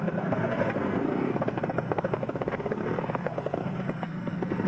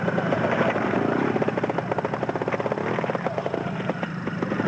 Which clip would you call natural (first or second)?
second